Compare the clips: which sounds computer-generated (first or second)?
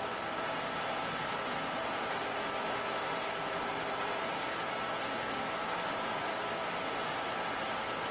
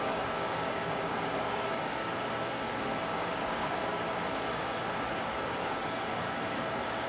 second